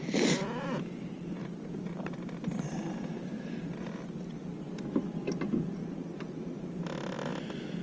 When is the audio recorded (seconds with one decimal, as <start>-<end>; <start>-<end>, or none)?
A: 0.0-5.8; 6.7-7.8